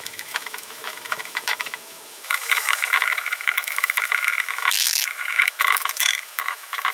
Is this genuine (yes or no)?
no